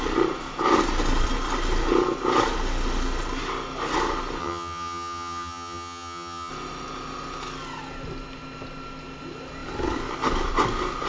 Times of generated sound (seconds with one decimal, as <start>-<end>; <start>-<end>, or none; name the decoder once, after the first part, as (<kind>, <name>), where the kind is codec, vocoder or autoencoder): 4.4-6.5 (vocoder, HiFi-GAN)